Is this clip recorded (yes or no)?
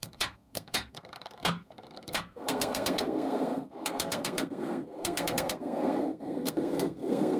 no